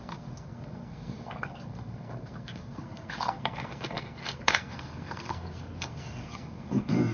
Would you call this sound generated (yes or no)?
yes